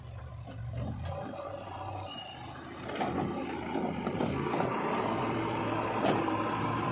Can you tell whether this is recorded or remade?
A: recorded